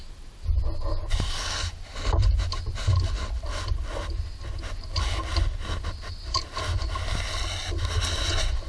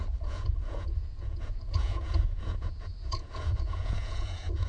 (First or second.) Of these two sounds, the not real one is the second